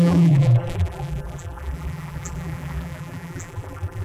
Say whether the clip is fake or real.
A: fake